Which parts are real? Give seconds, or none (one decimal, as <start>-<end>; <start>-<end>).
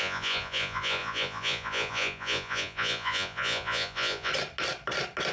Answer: 4.3-5.3